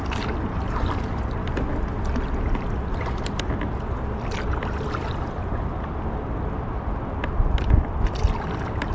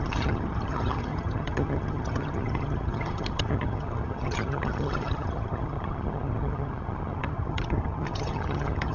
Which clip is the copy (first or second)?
second